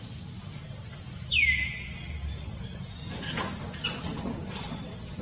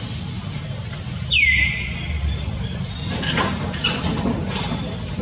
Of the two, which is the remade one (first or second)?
second